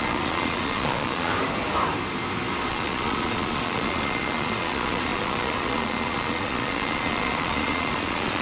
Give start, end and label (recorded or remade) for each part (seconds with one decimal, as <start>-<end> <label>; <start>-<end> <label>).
0.0-1.3 remade; 1.3-2.7 recorded; 2.7-8.4 remade

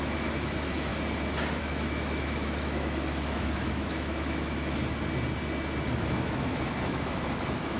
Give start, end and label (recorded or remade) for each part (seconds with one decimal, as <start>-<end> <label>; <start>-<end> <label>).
0.0-0.9 remade; 0.9-1.6 recorded; 1.6-4.8 remade; 4.8-5.9 recorded; 5.9-7.8 remade

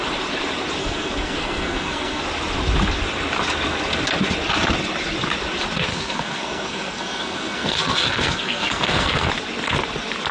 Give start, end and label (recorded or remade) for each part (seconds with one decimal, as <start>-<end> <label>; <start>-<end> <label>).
0.0-0.8 recorded; 0.8-2.2 remade; 2.2-5.9 recorded; 5.9-9.3 remade; 9.3-10.3 recorded

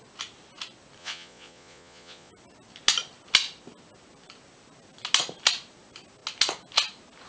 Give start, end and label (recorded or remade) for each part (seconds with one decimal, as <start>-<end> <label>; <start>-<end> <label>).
0.0-1.0 recorded; 1.0-2.3 remade; 2.3-7.3 recorded

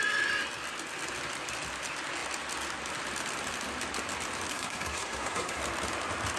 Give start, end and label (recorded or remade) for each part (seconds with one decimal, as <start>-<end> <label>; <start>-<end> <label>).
0.0-4.5 recorded; 4.5-5.6 remade; 5.6-6.4 recorded

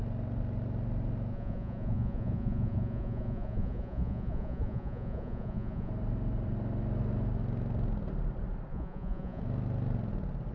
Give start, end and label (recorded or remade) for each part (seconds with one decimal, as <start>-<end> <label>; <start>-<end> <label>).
0.0-1.3 recorded; 1.3-5.9 remade; 5.9-8.7 recorded; 8.7-9.4 remade; 9.4-10.5 recorded

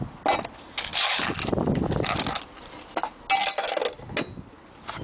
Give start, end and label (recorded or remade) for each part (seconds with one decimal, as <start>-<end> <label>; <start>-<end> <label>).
0.0-5.0 recorded